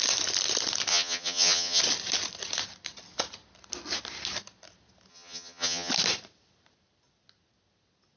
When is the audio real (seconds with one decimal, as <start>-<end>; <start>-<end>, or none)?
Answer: 0.0-0.9; 1.8-5.1; 5.9-8.2